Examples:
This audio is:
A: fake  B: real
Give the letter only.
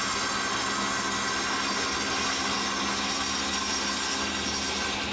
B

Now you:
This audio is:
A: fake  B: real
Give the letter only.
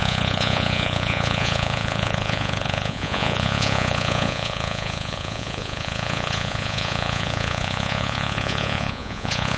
A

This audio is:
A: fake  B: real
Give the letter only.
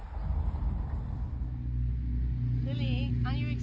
B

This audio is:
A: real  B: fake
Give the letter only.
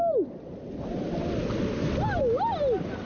A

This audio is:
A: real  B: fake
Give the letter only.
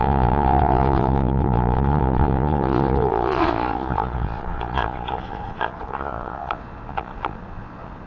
B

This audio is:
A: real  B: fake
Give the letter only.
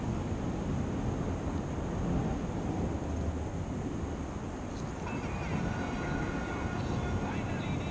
A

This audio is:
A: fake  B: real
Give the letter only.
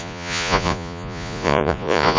A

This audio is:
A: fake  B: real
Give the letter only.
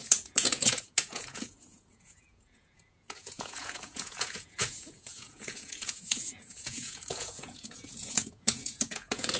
A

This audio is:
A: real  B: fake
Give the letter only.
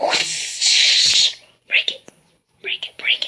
B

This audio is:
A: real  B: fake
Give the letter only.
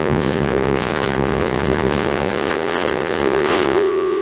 B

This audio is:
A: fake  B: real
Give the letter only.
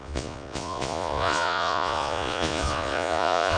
A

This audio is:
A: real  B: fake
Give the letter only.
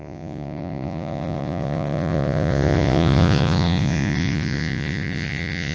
B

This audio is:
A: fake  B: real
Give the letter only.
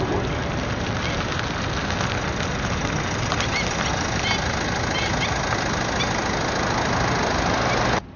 B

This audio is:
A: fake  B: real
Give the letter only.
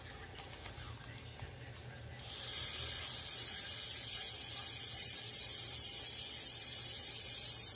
B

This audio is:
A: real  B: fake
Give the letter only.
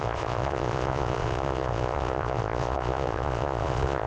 B